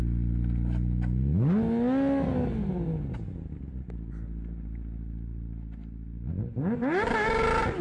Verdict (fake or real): real